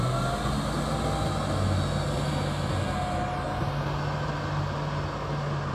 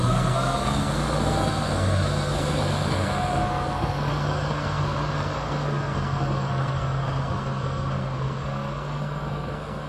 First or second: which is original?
first